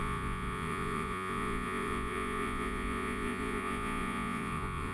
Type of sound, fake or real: fake